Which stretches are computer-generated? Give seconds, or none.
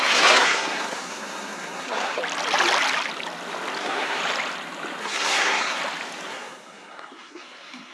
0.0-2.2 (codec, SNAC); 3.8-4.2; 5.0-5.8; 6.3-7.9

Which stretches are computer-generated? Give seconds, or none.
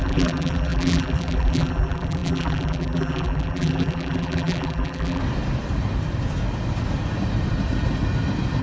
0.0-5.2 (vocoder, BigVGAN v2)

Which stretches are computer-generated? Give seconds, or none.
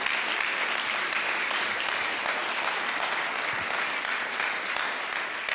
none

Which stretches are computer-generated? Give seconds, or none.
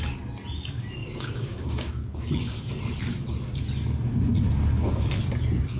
1.0-2.8 (codec, DAC)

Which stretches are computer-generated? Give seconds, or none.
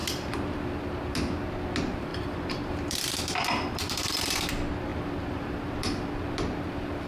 0.0-0.7 (vocoder, BigVGAN v2); 2.1-4.5; 4.9-6.1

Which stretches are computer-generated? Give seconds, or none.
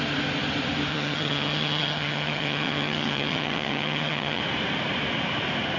0.9-4.4 (vocoder, HiFi-GAN)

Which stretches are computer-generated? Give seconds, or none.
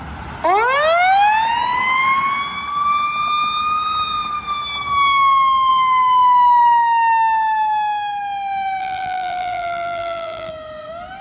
8.8-10.5 (vocoder, BigVGAN v2)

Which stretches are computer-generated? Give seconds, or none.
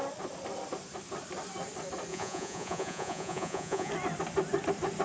2.1-3.9 (vocoder, Vocos)